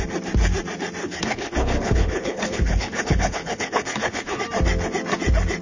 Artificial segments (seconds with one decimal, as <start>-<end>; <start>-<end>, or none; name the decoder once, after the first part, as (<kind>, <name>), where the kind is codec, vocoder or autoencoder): 1.0-4.4 (codec, HILCodec)